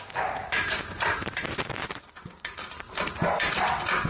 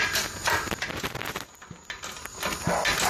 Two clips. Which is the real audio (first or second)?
second